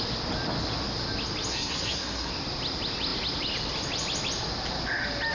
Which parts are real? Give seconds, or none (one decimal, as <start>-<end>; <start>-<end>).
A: 0.0-1.5; 2.3-5.3